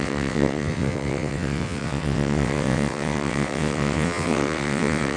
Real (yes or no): no